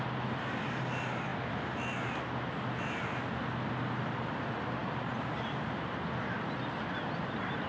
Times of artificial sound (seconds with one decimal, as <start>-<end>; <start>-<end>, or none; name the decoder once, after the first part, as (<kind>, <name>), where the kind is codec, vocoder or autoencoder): none